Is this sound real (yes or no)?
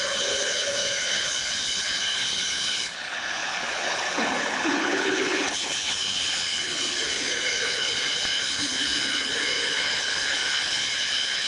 no